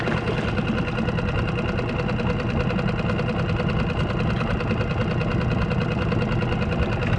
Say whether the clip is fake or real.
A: real